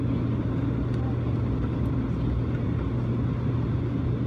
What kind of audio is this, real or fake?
real